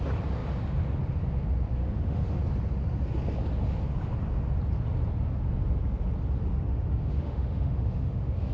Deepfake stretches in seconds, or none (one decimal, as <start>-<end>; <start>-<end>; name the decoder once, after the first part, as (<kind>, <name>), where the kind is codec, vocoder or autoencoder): 1.8-2.4 (autoencoder, DAC-VAE); 6.5-8.5